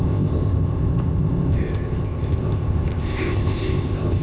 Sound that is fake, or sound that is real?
fake